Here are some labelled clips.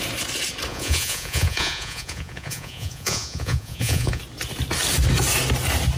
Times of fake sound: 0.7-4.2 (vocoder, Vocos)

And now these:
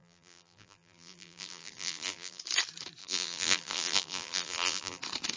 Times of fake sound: 0.0-2.4 (vocoder, BigVGAN v2); 3.0-5.0

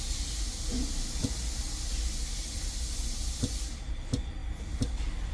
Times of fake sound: none

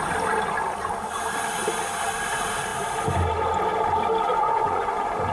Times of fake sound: 4.3-5.3 (vocoder, Vocos)

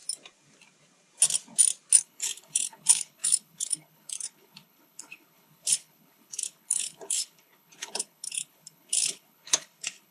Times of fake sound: 2.0-10.1 (codec, HILCodec)

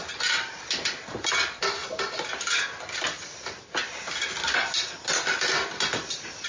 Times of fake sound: none

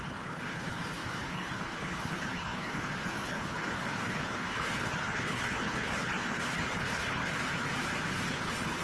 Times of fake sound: 0.0-7.3 (codec, HILCodec); 8.3-8.8